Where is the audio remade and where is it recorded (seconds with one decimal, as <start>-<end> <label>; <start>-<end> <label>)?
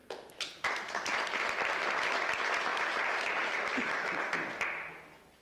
0.0-2.7 recorded; 2.7-4.3 remade; 4.3-5.4 recorded